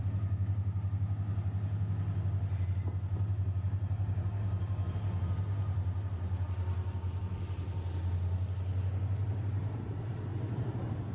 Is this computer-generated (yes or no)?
no